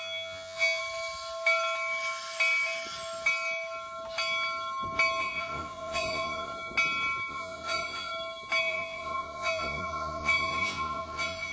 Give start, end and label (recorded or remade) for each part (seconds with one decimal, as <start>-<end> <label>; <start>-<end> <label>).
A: 0.0-0.8 remade; 0.8-5.2 recorded; 5.2-6.5 remade; 6.5-7.3 recorded; 7.3-8.1 remade; 8.1-8.6 recorded; 8.6-11.5 remade